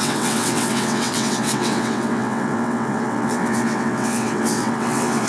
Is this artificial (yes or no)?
yes